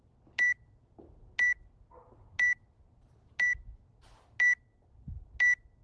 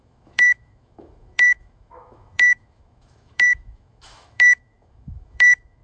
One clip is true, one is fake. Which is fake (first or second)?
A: second